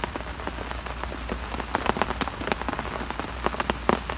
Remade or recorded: recorded